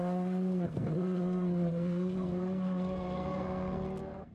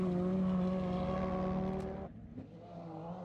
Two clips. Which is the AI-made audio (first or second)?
first